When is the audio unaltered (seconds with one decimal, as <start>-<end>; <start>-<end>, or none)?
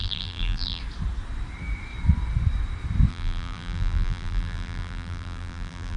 0.8-3.1